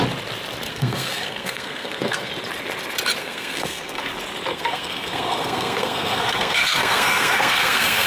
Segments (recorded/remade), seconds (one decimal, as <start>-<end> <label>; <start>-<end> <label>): 0.0-0.7 recorded; 0.7-2.3 remade; 2.3-3.2 recorded; 3.2-4.1 remade; 4.1-4.5 recorded; 4.5-8.1 remade